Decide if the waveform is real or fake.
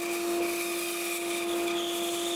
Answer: real